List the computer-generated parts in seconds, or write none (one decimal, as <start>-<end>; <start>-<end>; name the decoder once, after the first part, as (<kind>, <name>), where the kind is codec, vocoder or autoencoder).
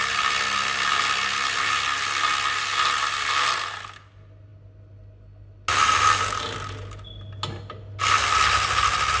none